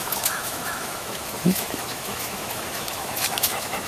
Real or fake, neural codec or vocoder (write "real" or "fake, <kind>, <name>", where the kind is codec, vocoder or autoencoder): fake, autoencoder, DAC-VAE